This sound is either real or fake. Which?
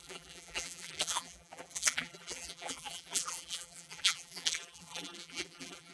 fake